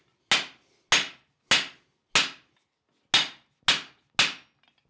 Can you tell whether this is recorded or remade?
recorded